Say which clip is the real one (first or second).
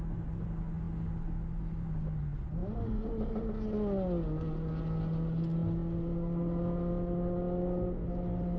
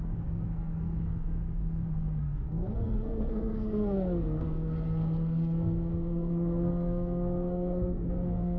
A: first